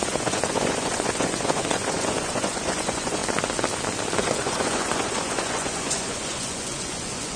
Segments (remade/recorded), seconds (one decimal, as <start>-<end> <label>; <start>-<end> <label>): 0.0-3.2 remade; 3.2-4.2 recorded; 4.2-7.4 remade